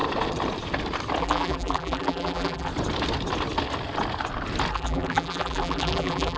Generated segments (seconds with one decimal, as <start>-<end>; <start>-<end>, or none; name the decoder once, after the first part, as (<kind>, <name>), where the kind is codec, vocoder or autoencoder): 1.2-2.7 (vocoder, BigVGAN v2); 4.7-6.4